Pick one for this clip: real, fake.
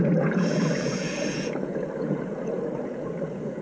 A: fake